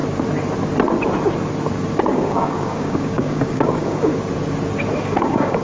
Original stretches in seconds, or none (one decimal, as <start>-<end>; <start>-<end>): 0.0-2.1; 4.1-5.0